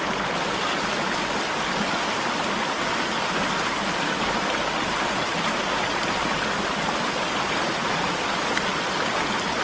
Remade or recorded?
recorded